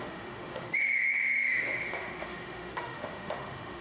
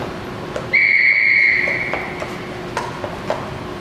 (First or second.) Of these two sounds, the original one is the second